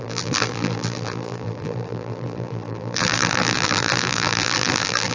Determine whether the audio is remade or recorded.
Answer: remade